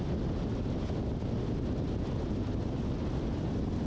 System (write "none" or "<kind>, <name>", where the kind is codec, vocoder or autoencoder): none